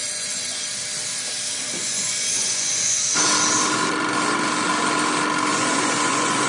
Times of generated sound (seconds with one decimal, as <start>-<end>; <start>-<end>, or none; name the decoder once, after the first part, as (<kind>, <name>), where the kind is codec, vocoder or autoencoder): 0.0-0.6 (vocoder, Vocos); 1.8-3.0; 5.5-6.5